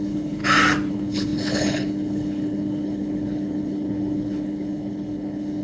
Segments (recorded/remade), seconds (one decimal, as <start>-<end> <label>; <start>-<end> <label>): 0.0-0.4 remade; 0.4-0.9 recorded; 0.9-5.6 remade